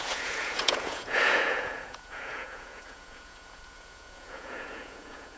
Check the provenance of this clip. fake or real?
fake